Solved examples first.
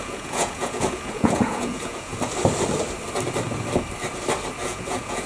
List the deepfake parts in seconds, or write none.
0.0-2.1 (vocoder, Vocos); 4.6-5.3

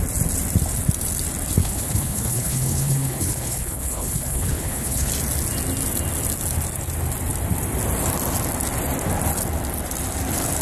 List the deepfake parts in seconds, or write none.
1.6-5.1 (codec, HILCodec)

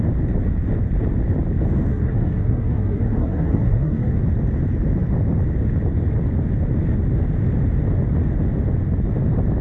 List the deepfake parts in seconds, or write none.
1.9-4.2 (codec, SNAC)

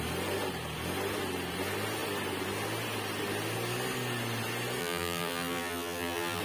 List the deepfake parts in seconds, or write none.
4.8-6.4 (vocoder, BigVGAN v2)

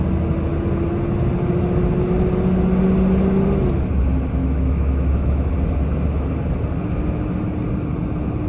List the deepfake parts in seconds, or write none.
4.4-5.5 (autoencoder, DAC-VAE)

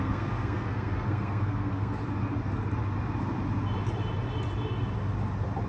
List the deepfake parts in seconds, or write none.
0.0-2.0 (codec, SNAC)